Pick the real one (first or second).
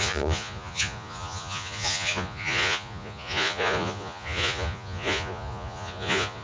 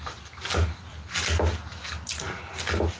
second